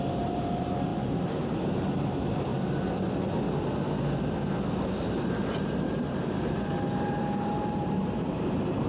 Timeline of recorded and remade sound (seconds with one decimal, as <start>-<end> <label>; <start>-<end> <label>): 0.0-2.5 remade; 2.5-4.7 recorded; 4.7-8.9 remade